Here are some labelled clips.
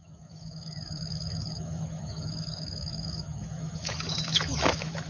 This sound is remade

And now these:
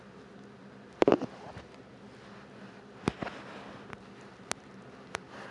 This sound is recorded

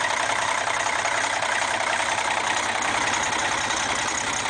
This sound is recorded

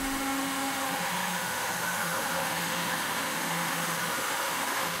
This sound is remade